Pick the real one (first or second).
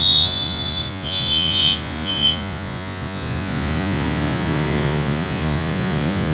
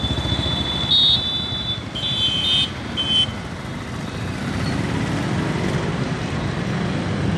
second